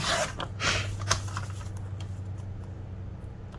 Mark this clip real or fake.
real